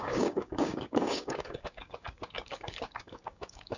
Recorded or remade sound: remade